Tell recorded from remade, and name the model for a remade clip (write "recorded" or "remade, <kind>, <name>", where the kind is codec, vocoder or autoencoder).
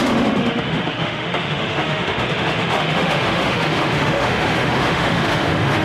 remade, autoencoder, DAC-VAE